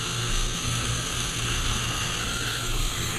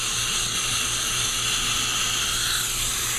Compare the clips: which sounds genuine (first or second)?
second